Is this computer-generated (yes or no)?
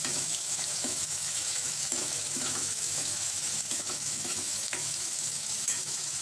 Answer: yes